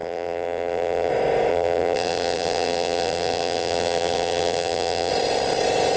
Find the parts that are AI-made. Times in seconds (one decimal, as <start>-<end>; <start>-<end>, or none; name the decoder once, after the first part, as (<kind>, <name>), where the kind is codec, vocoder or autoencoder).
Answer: 0.0-1.1 (vocoder, BigVGAN v2); 1.5-5.1